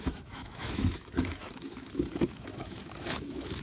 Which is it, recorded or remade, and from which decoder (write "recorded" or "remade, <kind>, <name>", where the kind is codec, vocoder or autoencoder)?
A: remade, autoencoder, DAC-VAE